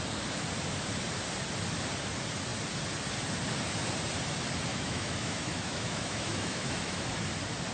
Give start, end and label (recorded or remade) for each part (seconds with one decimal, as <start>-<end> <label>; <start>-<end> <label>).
0.0-4.7 recorded; 4.7-7.1 remade; 7.1-7.7 recorded